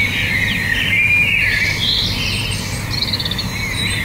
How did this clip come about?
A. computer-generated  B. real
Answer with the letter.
B